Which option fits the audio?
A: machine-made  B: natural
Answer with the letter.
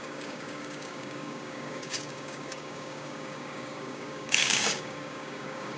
A